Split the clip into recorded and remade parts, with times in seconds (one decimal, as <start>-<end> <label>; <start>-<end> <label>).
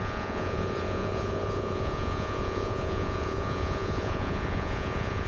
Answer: 0.0-5.3 remade